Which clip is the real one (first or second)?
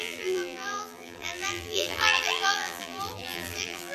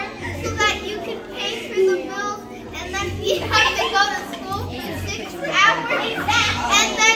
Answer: second